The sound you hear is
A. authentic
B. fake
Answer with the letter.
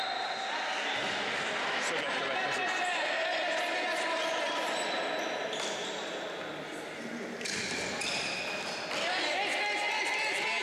A